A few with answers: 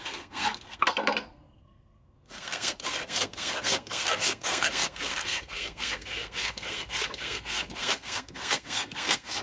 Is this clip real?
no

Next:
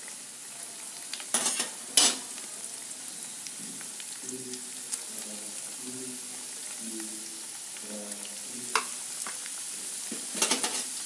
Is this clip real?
yes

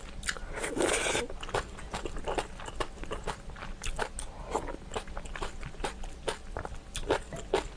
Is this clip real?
yes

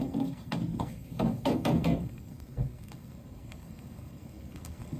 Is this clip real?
no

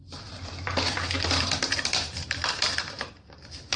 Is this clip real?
no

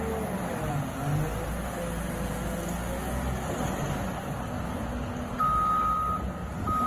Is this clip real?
yes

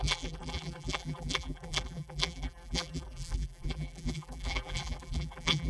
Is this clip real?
no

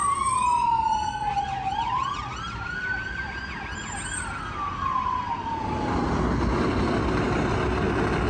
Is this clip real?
yes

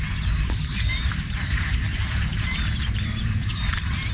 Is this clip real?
no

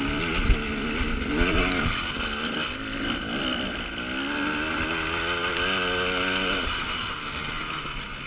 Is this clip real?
yes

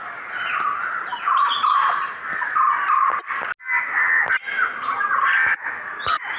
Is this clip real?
yes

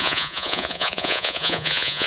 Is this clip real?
no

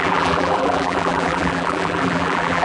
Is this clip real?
no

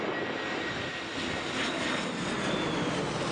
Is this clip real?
yes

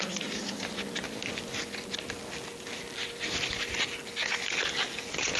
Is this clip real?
yes